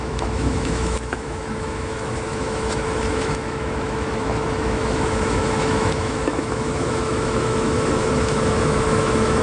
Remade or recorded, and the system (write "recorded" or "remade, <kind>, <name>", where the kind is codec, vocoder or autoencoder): remade, autoencoder, DAC-VAE